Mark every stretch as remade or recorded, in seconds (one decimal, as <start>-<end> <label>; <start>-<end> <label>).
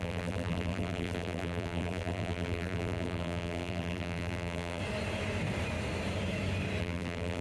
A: 0.0-4.8 remade; 4.8-6.8 recorded; 6.8-7.4 remade